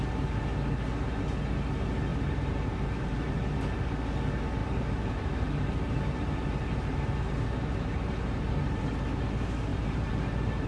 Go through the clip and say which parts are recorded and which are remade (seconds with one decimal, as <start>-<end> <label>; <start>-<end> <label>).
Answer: 0.0-2.1 recorded; 2.1-3.6 remade; 3.6-4.6 recorded; 4.6-8.8 remade; 8.8-9.7 recorded; 9.7-10.7 remade